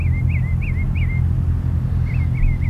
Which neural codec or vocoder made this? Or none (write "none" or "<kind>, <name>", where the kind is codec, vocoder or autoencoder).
none